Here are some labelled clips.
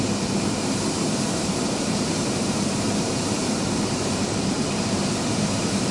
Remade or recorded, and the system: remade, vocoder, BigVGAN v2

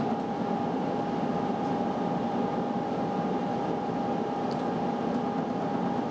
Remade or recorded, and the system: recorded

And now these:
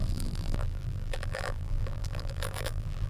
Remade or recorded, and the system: remade, vocoder, BigVGAN v2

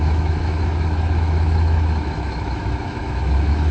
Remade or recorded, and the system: remade, autoencoder, DAC-VAE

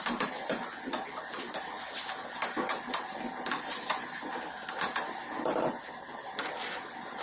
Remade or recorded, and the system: recorded